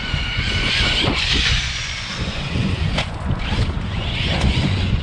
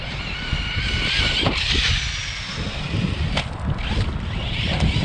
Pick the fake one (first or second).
first